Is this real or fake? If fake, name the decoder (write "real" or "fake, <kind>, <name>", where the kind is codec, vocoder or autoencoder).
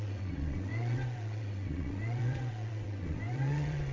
fake, vocoder, WaveNeXt